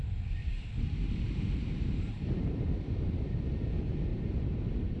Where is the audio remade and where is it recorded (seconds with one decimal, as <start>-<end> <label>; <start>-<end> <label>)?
0.0-0.4 recorded; 0.4-3.4 remade; 3.4-4.1 recorded; 4.1-5.0 remade